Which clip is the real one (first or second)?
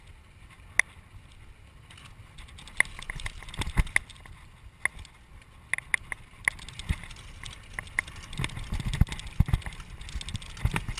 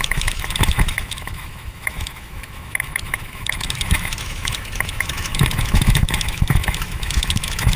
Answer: first